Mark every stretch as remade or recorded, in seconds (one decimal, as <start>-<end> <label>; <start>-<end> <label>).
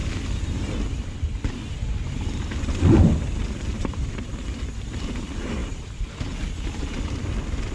0.0-3.4 recorded; 3.4-4.3 remade; 4.3-5.6 recorded; 5.6-6.2 remade; 6.2-7.7 recorded